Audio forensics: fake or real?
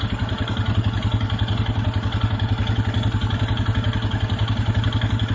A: real